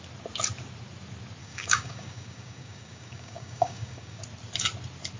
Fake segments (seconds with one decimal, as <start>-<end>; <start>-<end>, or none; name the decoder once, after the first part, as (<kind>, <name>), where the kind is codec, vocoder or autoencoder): 1.4-4.2 (codec, DAC)